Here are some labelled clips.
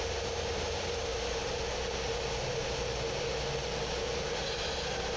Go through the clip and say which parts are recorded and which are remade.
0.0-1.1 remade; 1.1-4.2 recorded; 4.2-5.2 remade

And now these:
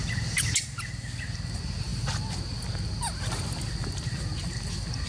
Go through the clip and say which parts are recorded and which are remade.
0.0-5.1 recorded

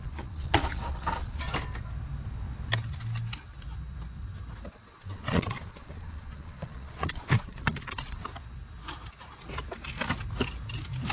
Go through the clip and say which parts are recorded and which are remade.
0.0-1.5 remade; 1.5-4.7 recorded; 4.7-8.2 remade; 8.2-11.1 recorded

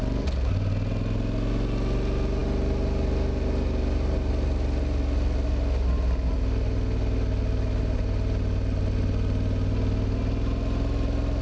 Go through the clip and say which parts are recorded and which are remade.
0.0-11.4 recorded

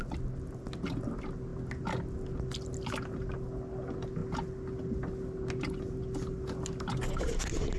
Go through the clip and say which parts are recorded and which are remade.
0.0-7.8 recorded

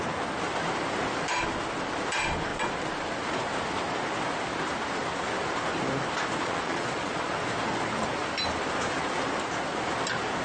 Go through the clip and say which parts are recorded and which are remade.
0.0-6.4 recorded; 6.4-7.3 remade; 7.3-10.4 recorded